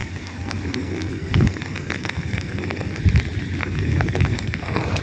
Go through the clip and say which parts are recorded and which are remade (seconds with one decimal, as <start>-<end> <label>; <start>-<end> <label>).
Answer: 0.0-3.0 remade; 3.0-3.6 recorded; 3.6-5.0 remade